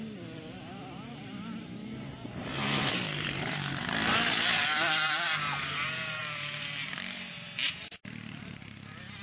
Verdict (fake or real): fake